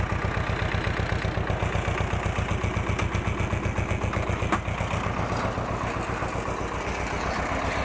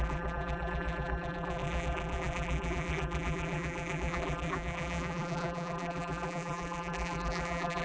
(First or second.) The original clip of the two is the first